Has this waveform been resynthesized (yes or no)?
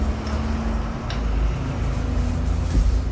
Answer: no